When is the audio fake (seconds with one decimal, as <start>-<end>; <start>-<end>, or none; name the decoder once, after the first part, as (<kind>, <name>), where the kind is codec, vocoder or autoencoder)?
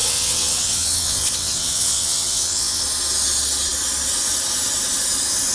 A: 0.0-2.8 (vocoder, WaveNeXt)